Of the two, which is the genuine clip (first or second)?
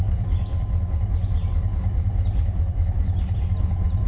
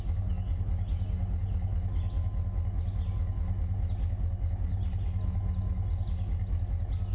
second